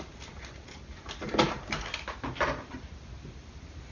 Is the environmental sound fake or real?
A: real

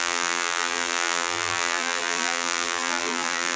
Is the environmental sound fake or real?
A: fake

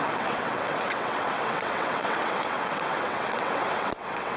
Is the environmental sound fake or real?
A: fake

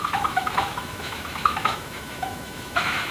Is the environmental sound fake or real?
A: fake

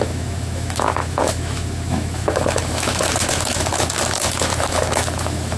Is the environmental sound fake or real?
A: fake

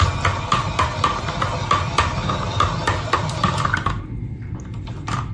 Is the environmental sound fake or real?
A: real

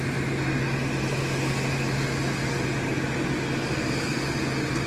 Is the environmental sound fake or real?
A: real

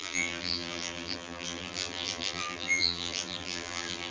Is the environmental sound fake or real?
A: fake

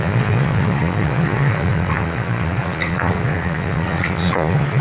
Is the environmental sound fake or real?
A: fake